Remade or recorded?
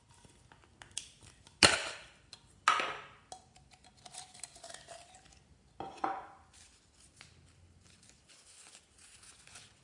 recorded